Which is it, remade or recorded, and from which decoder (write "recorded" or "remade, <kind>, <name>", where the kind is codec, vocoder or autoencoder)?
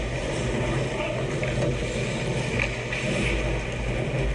recorded